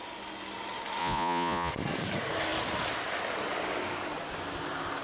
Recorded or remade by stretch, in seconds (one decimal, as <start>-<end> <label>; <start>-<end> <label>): 0.0-1.0 recorded; 1.0-1.7 remade; 1.7-5.0 recorded